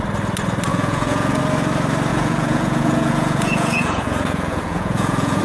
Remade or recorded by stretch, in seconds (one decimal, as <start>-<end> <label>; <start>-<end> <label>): 0.0-0.7 recorded; 0.7-1.4 remade; 1.4-2.1 recorded; 2.1-5.4 remade